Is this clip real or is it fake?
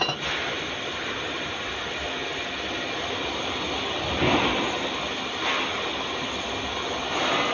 real